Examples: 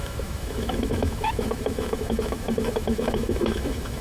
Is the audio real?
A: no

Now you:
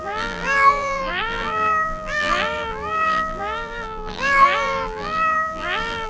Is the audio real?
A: no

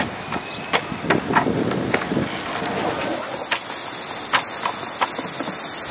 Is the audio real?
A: yes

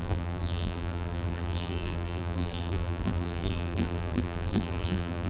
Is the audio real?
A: no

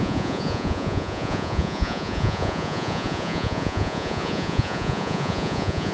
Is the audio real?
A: no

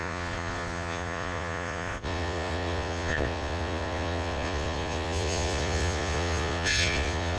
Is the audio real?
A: no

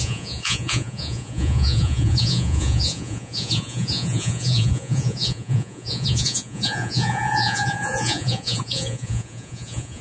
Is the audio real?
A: no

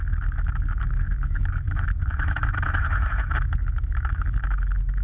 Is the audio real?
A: no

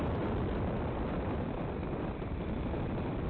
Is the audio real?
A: yes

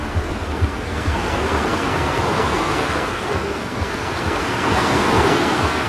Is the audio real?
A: no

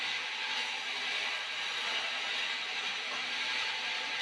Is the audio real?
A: yes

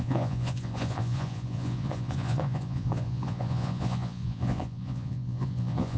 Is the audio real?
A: no